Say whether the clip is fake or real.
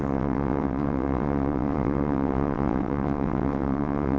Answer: fake